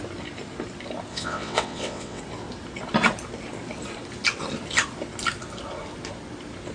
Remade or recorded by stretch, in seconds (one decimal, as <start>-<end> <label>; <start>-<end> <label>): 0.0-1.1 recorded; 1.1-2.2 remade; 2.2-6.7 recorded